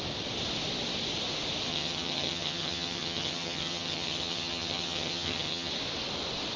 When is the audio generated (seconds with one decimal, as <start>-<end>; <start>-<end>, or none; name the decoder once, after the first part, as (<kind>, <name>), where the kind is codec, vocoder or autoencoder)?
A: 1.7-5.7 (vocoder, HiFi-GAN)